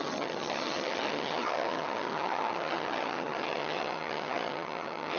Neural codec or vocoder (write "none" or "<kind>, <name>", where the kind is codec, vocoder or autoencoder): vocoder, HiFi-GAN